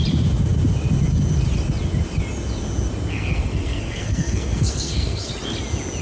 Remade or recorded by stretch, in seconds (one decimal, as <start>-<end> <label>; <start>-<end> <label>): 0.0-3.1 recorded; 3.1-5.3 remade; 5.3-6.0 recorded

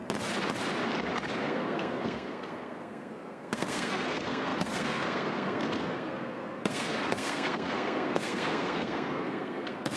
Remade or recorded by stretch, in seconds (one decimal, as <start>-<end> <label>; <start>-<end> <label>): 0.0-1.4 recorded; 1.4-10.0 remade

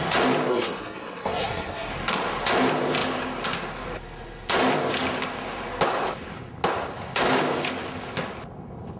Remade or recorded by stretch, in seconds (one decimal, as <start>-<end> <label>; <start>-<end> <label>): 0.0-0.5 recorded; 0.5-1.9 remade; 1.9-9.0 recorded

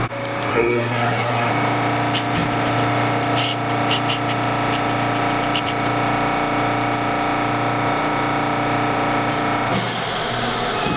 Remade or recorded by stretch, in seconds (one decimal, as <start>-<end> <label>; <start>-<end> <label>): 0.0-0.5 recorded; 0.5-1.5 remade; 1.5-11.0 recorded

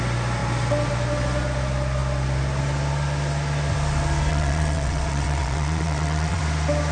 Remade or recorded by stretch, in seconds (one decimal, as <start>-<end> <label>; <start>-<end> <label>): 0.0-4.3 recorded; 4.3-6.4 remade; 6.4-6.9 recorded

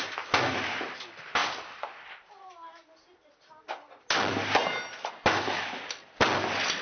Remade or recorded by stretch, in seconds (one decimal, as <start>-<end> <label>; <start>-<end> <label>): 0.0-6.8 recorded

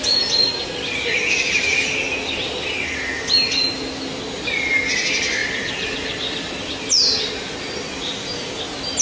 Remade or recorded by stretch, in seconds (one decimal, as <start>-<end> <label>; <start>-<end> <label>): 0.0-9.0 recorded

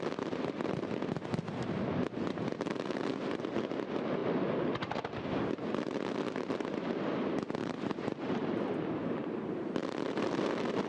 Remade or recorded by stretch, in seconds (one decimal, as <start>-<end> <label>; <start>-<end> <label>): 0.0-7.6 recorded; 7.6-8.7 remade; 8.7-9.2 recorded; 9.2-9.8 remade; 9.8-10.9 recorded